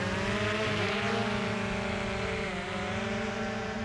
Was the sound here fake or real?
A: fake